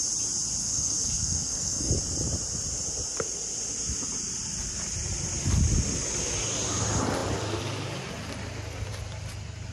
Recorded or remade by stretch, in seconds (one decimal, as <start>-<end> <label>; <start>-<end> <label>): 0.0-0.6 recorded; 0.6-1.9 remade; 1.9-9.7 recorded